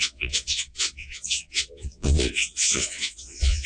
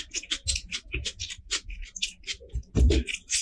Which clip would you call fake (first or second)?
first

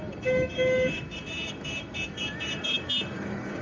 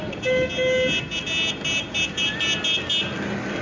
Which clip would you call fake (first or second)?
first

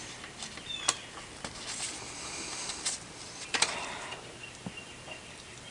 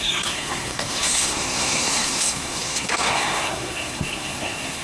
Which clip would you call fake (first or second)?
second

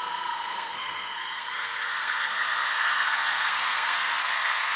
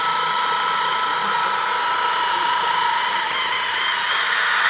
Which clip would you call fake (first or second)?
first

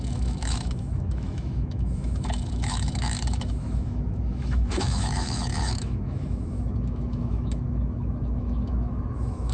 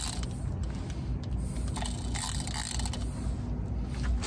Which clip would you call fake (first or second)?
first